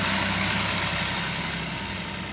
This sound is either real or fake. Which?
real